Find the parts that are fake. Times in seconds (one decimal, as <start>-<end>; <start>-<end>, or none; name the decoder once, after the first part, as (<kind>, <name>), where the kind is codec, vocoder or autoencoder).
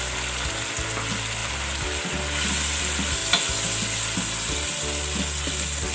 none